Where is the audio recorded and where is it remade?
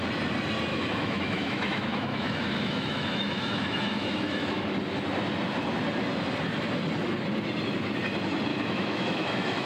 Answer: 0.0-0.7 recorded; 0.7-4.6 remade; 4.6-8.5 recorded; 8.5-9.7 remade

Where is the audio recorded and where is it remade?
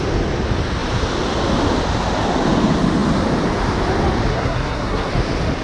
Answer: 0.0-4.3 recorded; 4.3-5.1 remade; 5.1-5.6 recorded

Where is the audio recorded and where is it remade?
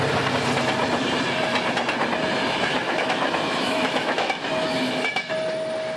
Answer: 0.0-2.7 recorded; 2.7-5.3 remade; 5.3-6.0 recorded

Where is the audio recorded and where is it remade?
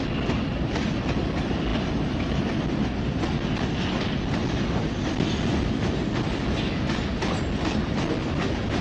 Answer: 0.0-8.8 recorded